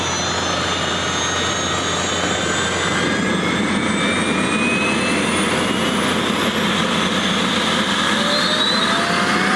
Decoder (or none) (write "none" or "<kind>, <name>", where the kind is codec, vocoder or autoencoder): none